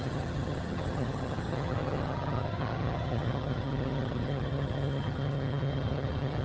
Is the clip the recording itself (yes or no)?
no